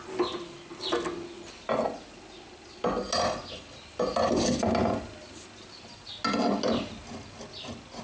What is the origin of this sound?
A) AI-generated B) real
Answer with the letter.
B